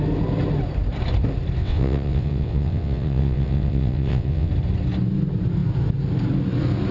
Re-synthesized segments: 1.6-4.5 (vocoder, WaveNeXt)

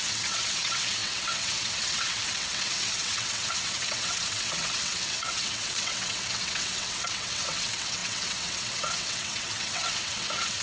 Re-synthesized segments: 0.0-10.6 (vocoder, WaveNeXt)

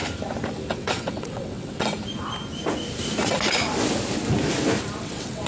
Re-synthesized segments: 0.7-1.9 (vocoder, WaveNeXt); 5.0-5.5

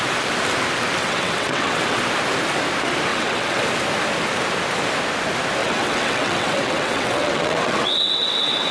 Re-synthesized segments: 1.0-2.0 (vocoder, WaveNeXt); 3.1-3.6; 5.6-8.7

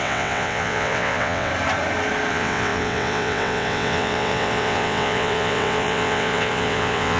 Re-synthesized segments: 0.0-1.5 (vocoder, WaveNeXt); 2.3-7.2

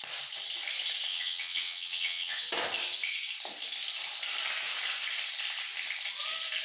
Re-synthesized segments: 1.1-2.5 (vocoder, WaveNeXt)